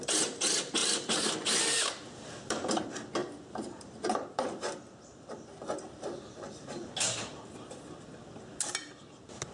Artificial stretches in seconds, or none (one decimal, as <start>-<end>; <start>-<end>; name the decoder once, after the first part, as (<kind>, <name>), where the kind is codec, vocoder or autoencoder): 0.8-2.8 (vocoder, BigVGAN v2); 3.2-6.9